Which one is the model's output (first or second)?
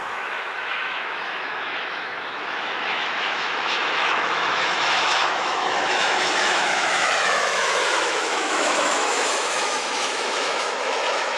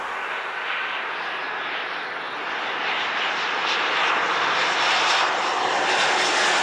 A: first